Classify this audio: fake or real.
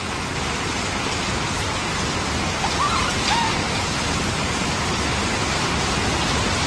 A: real